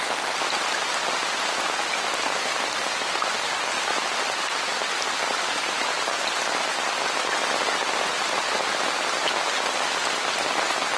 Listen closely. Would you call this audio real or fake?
real